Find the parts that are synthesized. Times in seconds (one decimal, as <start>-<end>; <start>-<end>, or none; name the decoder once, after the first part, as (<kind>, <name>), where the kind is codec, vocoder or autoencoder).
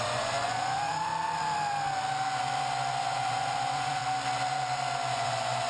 0.0-1.1 (vocoder, Vocos); 3.0-4.0; 5.1-5.7